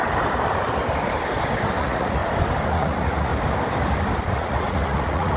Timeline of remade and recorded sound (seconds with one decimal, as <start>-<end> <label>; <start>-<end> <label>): 0.0-1.8 recorded; 1.8-2.2 remade; 2.2-2.7 recorded; 2.7-3.3 remade; 3.3-4.3 recorded; 4.3-5.4 remade